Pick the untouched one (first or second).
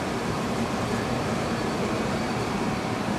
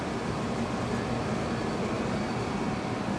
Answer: second